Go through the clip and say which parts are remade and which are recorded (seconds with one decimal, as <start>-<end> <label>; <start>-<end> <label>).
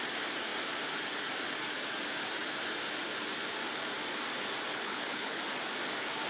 0.0-4.7 recorded; 4.7-5.4 remade; 5.4-6.3 recorded